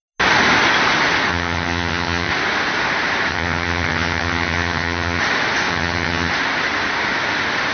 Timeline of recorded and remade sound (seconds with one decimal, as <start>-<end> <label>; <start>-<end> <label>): 0.0-1.3 recorded; 1.3-2.3 remade; 2.3-3.3 recorded; 3.3-5.2 remade; 5.2-5.7 recorded; 5.7-6.3 remade; 6.3-7.7 recorded